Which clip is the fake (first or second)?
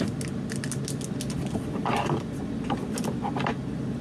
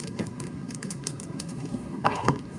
second